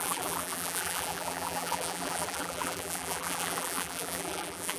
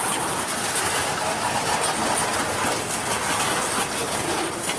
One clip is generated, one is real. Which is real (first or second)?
second